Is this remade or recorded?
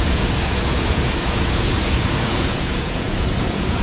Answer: remade